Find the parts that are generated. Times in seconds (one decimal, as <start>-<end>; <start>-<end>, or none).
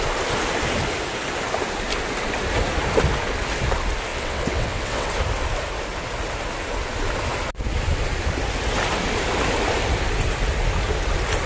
4.1-5.1